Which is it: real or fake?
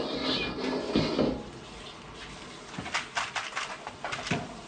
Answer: real